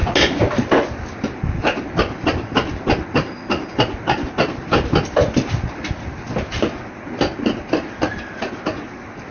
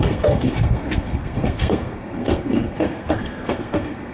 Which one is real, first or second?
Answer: first